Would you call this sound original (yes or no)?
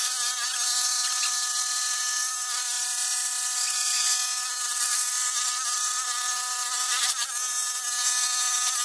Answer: yes